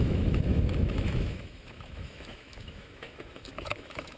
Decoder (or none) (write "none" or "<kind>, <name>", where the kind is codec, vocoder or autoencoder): autoencoder, DAC-VAE